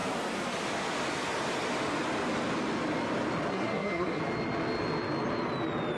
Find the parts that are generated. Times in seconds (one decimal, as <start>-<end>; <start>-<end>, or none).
3.5-4.2